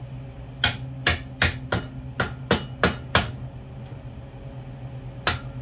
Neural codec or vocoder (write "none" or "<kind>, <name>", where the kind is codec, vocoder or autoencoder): none